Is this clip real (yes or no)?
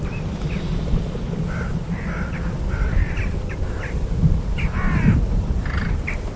no